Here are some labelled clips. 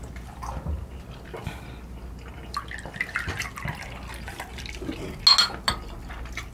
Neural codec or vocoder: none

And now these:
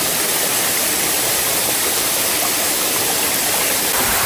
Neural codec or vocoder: none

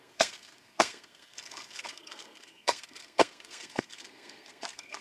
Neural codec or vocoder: codec, SNAC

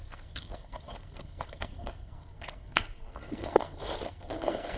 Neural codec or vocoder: codec, SNAC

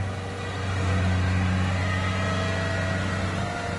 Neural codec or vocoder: none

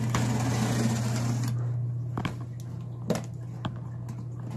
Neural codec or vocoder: none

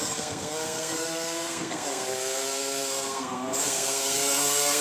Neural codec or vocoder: codec, SNAC